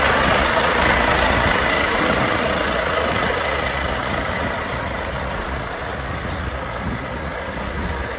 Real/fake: fake